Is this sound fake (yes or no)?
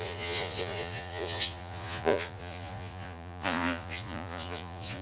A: yes